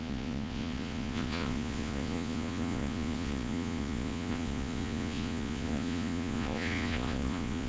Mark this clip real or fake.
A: fake